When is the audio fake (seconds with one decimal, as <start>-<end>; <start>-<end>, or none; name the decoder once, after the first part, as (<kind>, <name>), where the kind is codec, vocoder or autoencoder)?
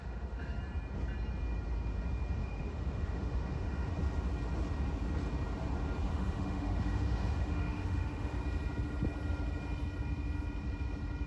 0.0-0.6 (autoencoder, DAC-VAE); 2.4-3.9; 6.1-8.4